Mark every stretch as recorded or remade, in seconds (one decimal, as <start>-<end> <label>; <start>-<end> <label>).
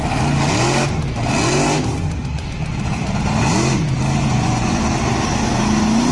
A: 0.0-4.2 recorded; 4.2-4.8 remade; 4.8-6.1 recorded